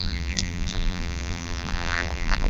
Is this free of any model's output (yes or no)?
no